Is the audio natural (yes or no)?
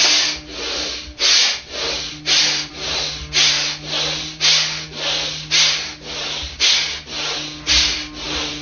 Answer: yes